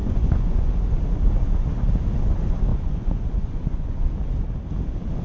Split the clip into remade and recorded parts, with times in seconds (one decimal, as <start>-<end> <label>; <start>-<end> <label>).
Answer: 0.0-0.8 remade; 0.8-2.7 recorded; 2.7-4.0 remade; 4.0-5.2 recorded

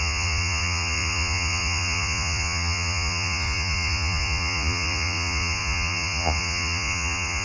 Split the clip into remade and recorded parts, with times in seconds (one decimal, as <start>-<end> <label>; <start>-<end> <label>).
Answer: 0.0-7.4 remade

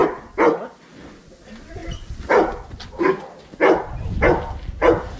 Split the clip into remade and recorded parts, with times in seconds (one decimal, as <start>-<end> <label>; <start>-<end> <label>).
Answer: 0.0-5.2 recorded

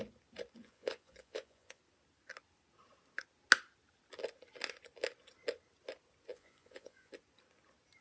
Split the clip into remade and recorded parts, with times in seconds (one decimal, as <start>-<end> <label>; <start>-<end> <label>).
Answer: 0.0-0.6 recorded; 0.6-1.8 remade; 1.8-6.3 recorded; 6.3-7.1 remade; 7.1-8.0 recorded